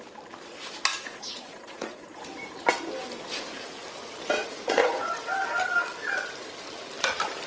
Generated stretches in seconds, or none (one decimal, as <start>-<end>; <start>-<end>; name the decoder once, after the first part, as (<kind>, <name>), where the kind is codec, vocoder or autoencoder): 0.9-2.2 (vocoder, Vocos); 4.4-5.2